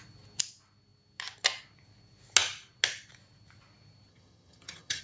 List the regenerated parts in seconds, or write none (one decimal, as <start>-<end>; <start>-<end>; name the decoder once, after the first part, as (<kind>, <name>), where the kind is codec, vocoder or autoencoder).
4.1-5.0 (vocoder, HiFi-GAN)